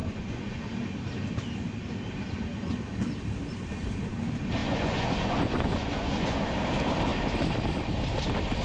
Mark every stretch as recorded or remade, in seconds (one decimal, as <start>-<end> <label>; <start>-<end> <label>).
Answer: 0.0-0.6 remade; 0.6-4.6 recorded; 4.6-6.4 remade; 6.4-8.6 recorded